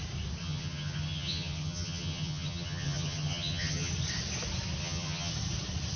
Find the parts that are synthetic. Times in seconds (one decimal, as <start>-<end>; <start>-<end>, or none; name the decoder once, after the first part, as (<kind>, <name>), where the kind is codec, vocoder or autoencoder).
0.4-3.9 (vocoder, HiFi-GAN); 4.8-5.3